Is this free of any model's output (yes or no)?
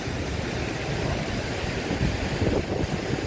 yes